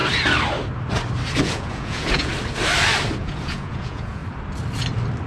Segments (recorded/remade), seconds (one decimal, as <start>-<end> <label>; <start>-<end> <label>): 0.0-1.4 recorded; 1.4-2.3 remade; 2.3-3.2 recorded; 3.2-4.2 remade; 4.2-5.3 recorded